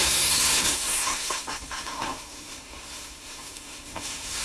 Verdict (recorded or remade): remade